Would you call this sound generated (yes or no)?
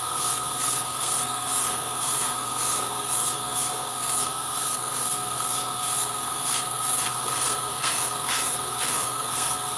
yes